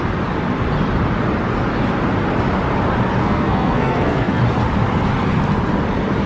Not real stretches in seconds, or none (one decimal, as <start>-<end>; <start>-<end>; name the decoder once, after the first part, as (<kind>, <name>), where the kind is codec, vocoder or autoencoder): 3.2-4.4 (codec, SNAC)